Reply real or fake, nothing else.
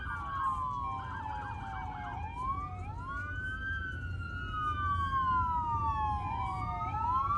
real